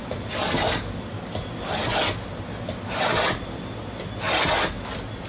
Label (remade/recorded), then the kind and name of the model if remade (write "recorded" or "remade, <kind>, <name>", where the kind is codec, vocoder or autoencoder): recorded